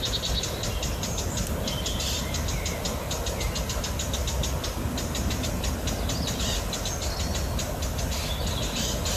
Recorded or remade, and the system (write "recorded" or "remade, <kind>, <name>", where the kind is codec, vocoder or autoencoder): recorded